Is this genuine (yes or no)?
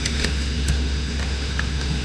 no